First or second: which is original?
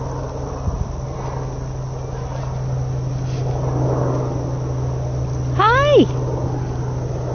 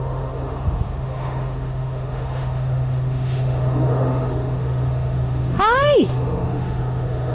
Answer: first